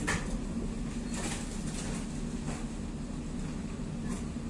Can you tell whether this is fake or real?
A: real